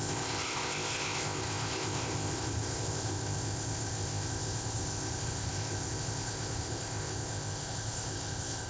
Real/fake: fake